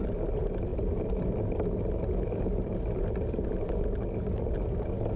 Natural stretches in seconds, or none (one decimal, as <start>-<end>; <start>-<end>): 0.0-5.2